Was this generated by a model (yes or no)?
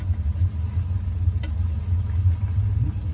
no